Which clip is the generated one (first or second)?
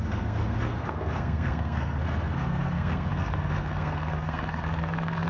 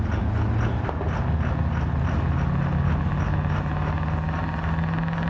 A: first